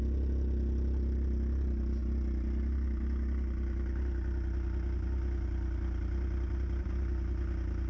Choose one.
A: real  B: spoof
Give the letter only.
A